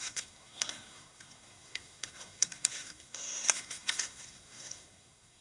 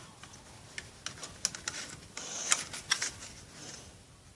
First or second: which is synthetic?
first